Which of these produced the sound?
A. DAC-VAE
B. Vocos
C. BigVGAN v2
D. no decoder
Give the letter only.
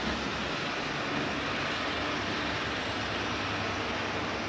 D